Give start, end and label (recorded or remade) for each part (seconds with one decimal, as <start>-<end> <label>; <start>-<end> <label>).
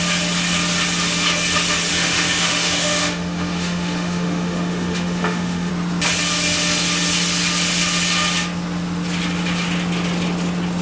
0.0-1.9 recorded; 1.9-5.7 remade; 5.7-10.8 recorded